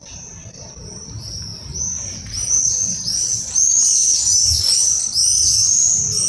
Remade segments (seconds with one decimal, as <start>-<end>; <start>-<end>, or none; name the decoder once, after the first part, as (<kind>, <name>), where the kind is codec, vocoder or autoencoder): none